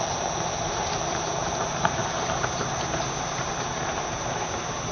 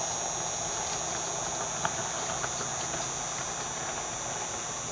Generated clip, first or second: first